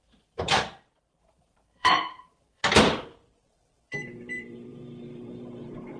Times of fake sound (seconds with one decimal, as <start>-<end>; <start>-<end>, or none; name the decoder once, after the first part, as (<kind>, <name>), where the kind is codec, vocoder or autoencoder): 0.0-0.6 (vocoder, BigVGAN v2); 1.2-2.6; 3.5-6.0